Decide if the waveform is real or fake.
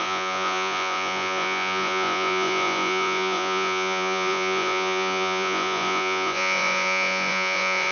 fake